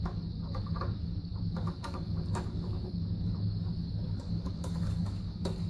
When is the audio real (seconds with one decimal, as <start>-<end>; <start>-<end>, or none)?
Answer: none